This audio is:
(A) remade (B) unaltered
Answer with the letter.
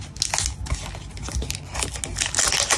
B